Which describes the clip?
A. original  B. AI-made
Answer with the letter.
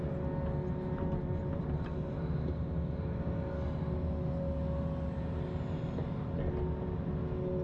A